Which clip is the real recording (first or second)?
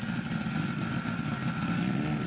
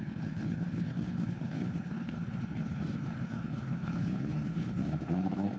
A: first